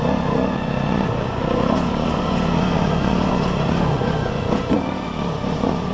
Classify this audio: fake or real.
fake